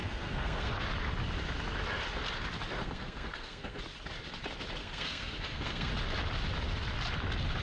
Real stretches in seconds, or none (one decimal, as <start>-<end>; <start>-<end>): 0.8-2.8; 3.8-4.8; 5.9-7.6

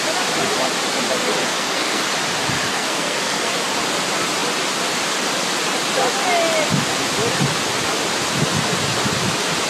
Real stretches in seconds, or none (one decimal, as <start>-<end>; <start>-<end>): 0.0-1.5; 2.0-2.7; 3.5-9.7

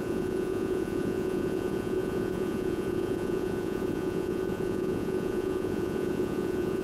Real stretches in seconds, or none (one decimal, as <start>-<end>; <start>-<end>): none

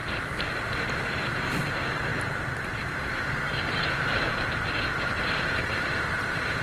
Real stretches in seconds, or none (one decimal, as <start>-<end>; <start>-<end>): 0.0-1.7